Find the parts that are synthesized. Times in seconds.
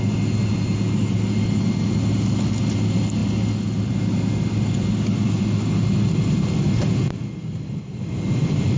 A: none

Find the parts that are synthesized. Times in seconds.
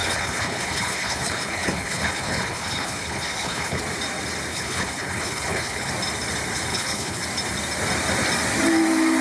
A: 0.0-3.8 (codec, HILCodec); 4.5-5.9; 6.7-7.2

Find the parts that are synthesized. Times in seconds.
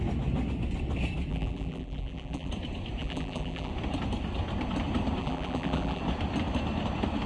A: 1.3-2.5 (vocoder, BigVGAN v2); 3.0-3.7; 5.2-6.0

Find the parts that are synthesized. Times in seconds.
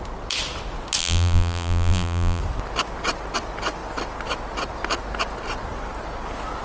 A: 1.0-2.4 (vocoder, BigVGAN v2)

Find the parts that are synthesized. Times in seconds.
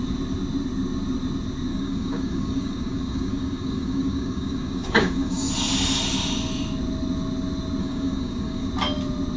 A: 1.7-5.5 (codec, DAC); 7.8-8.7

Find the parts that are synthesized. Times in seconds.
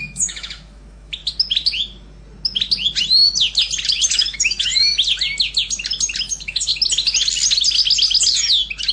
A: 0.0-1.2 (autoencoder, DAC-VAE); 4.1-4.7; 6.2-6.7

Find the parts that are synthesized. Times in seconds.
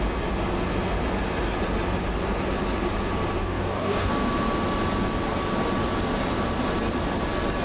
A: 3.4-4.1 (codec, DAC)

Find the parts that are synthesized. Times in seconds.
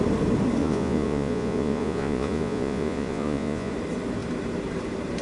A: 0.6-3.7 (vocoder, Vocos)